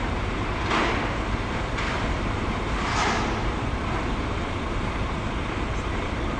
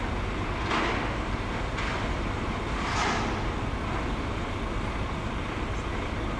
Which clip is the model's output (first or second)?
first